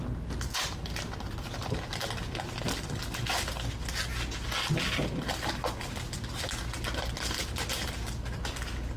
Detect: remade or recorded recorded